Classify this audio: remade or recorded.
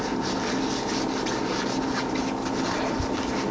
recorded